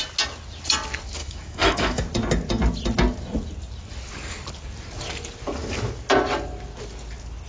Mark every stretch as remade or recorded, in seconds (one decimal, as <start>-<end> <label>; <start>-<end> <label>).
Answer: 0.0-1.2 recorded; 1.2-2.0 remade; 2.0-7.5 recorded